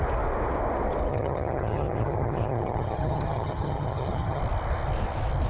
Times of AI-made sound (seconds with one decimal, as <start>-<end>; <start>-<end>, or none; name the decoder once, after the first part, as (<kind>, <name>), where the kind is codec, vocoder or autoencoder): 1.1-4.4 (vocoder, HiFi-GAN)